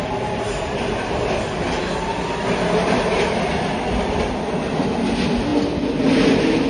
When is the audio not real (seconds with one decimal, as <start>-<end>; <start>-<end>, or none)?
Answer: none